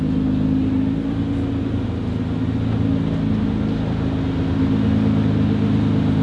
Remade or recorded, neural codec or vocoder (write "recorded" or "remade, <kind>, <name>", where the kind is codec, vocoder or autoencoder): recorded